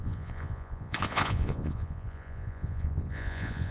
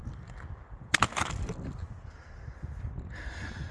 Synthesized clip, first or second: first